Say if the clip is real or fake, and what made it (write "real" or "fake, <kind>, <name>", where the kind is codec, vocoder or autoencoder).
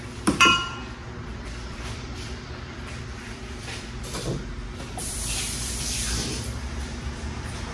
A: fake, vocoder, BigVGAN v2